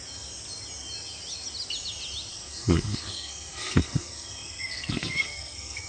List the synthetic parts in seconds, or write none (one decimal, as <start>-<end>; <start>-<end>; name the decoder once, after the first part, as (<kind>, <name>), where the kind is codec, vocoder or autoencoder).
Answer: 2.3-5.9 (codec, SNAC)